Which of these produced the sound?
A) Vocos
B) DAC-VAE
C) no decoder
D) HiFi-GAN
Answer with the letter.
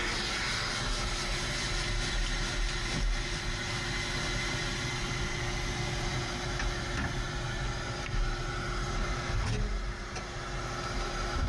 C